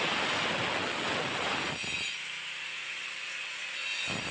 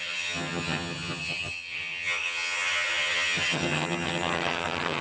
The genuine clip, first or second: first